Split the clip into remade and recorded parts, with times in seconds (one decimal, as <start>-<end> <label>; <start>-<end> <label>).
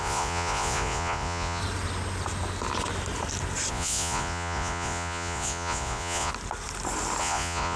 0.0-1.6 remade; 1.6-3.7 recorded; 3.7-6.3 remade; 6.3-7.2 recorded; 7.2-7.8 remade